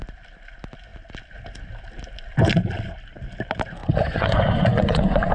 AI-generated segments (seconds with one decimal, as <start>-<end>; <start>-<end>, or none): 3.8-5.3